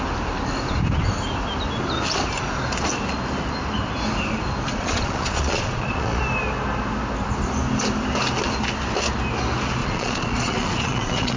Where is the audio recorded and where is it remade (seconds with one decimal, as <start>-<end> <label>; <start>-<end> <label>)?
0.0-4.7 recorded; 4.7-6.2 remade; 6.2-9.8 recorded; 9.8-11.4 remade